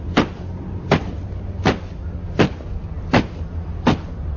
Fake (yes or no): no